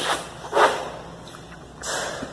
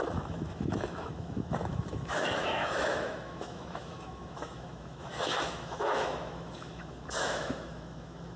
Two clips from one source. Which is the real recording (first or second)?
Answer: first